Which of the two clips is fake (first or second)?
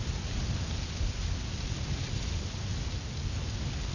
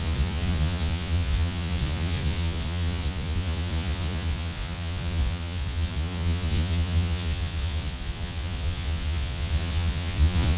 second